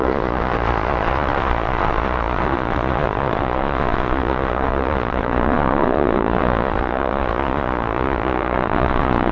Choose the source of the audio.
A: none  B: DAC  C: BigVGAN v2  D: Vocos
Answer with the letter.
D